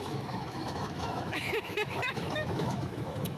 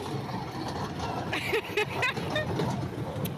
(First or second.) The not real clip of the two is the first